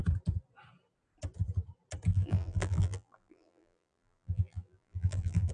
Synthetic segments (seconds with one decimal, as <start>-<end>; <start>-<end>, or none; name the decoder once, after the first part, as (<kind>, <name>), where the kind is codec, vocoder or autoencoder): 2.1-5.5 (vocoder, BigVGAN v2)